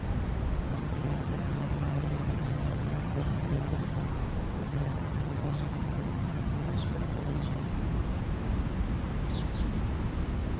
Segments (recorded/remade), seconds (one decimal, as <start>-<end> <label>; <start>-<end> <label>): 0.0-0.7 recorded; 0.7-4.1 remade; 4.1-4.6 recorded; 4.6-7.7 remade; 7.7-10.6 recorded